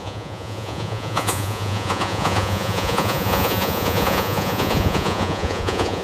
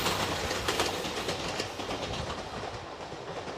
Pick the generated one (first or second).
first